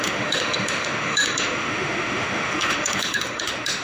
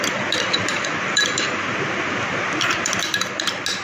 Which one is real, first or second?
second